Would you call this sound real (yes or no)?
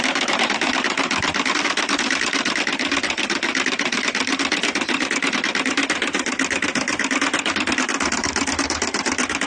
no